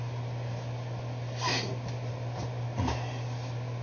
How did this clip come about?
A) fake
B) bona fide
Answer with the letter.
B